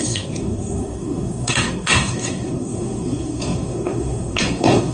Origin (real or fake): fake